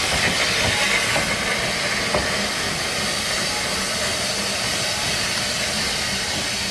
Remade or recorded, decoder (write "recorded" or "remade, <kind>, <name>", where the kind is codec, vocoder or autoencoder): recorded